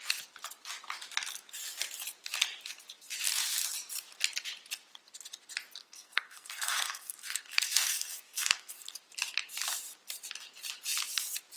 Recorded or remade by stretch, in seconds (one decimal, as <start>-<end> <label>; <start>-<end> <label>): 0.0-5.8 recorded; 5.8-8.9 remade; 8.9-11.6 recorded